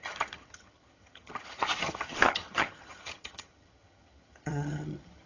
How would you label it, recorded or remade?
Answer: remade